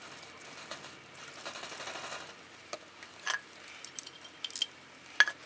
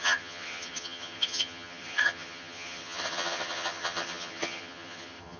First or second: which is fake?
second